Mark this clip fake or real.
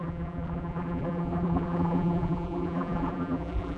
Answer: fake